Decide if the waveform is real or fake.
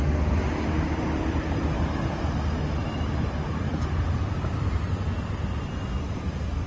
real